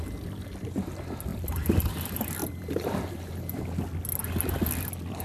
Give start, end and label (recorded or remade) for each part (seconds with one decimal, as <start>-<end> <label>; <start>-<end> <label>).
0.0-1.3 recorded; 1.3-1.9 remade; 1.9-2.4 recorded; 2.4-3.1 remade; 3.1-5.2 recorded